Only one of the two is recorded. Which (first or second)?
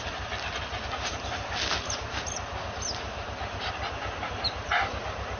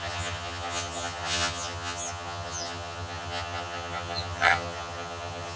first